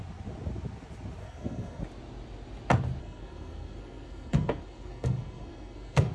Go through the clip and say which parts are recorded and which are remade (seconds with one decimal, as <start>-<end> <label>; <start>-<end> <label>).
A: 0.0-1.2 recorded; 1.2-1.8 remade; 1.8-3.0 recorded; 3.0-6.1 remade